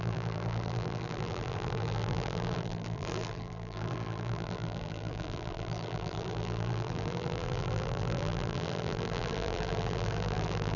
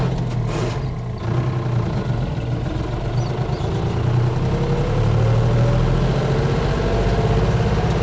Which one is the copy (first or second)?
first